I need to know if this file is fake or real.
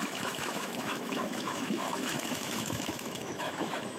fake